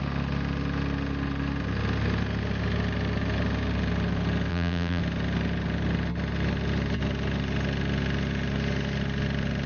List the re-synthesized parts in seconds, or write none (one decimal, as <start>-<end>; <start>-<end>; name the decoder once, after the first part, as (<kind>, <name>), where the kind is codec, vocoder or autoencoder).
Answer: 4.5-5.0 (vocoder, BigVGAN v2)